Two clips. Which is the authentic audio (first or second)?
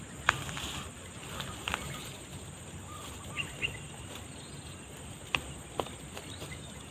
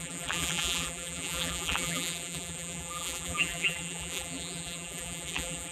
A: first